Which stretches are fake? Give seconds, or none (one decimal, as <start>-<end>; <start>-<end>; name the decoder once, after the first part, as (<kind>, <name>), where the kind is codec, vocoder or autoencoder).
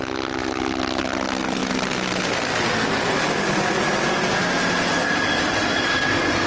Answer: none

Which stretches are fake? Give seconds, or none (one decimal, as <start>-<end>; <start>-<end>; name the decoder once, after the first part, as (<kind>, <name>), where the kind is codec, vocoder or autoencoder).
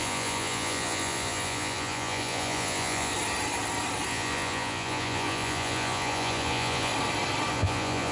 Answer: 0.0-3.1 (vocoder, Vocos); 4.1-6.9; 7.5-8.1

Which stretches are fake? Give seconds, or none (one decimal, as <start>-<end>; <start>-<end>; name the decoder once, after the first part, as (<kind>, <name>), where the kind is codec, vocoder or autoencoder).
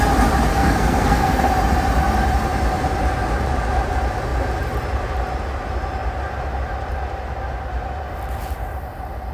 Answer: 0.5-1.5 (codec, SNAC)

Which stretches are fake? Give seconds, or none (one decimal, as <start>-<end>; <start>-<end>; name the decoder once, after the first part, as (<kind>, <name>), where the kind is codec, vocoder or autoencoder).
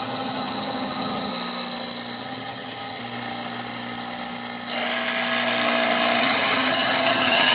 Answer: 0.0-1.3 (vocoder, HiFi-GAN); 2.2-3.0; 6.2-7.5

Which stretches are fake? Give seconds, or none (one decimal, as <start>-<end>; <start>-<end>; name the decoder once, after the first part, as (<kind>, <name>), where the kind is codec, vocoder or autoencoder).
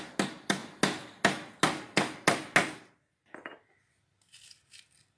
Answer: none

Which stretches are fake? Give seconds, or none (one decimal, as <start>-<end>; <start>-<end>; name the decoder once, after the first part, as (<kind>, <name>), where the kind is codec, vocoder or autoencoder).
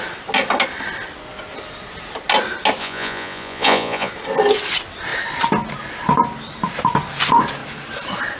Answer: 2.8-4.1 (vocoder, Vocos)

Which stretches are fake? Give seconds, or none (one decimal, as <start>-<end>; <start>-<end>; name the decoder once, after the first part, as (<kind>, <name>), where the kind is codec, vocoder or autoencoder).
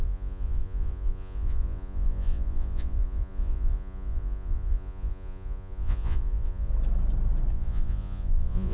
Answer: 0.0-6.7 (vocoder, Vocos); 7.5-8.7